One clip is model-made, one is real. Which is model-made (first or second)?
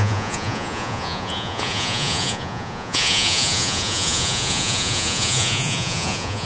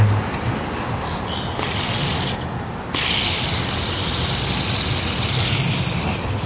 first